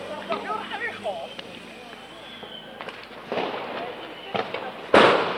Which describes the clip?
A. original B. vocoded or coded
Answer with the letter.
A